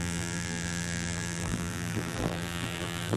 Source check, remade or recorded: remade